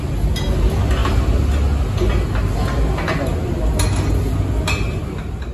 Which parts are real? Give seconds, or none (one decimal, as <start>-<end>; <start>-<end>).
0.0-5.5